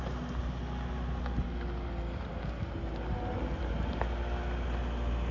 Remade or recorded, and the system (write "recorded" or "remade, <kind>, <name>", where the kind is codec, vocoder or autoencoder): recorded